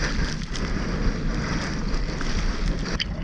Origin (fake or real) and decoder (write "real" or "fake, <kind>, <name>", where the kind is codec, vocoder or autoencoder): real